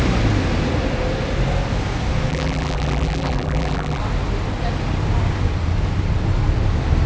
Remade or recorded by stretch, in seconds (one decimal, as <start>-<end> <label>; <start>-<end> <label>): 0.0-2.3 recorded; 2.3-4.0 remade; 4.0-7.1 recorded